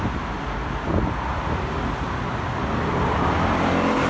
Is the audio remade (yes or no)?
no